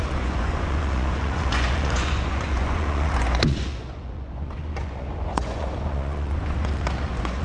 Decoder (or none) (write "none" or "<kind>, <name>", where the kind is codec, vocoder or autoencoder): vocoder, Vocos